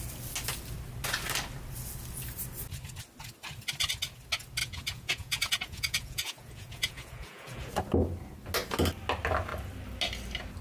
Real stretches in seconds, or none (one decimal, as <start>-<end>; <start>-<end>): 0.0-4.6; 7.8-10.6

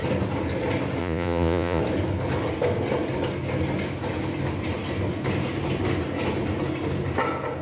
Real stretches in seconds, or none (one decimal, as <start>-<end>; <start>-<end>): 0.0-1.0; 1.8-7.6